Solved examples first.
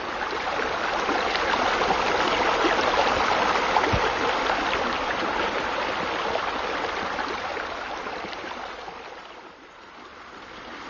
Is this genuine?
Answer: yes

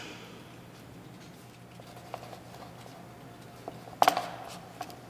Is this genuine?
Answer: yes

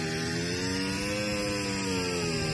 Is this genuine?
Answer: yes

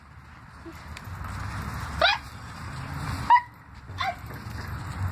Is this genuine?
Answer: yes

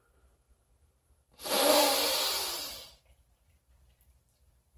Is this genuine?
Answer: no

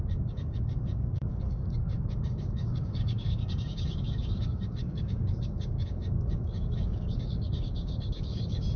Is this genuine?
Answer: no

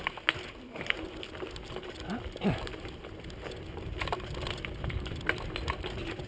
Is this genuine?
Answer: yes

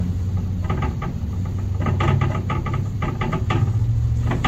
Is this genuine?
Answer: yes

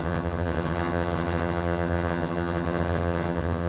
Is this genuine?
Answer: no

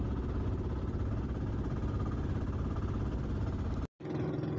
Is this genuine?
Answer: yes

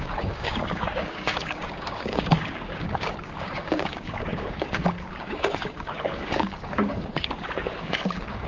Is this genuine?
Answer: no